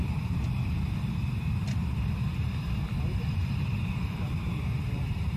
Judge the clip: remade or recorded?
remade